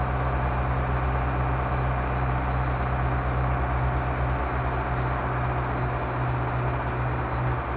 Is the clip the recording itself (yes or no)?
yes